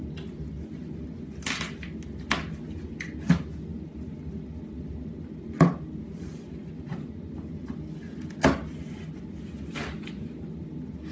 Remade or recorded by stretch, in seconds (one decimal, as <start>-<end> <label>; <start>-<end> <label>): 0.0-11.1 recorded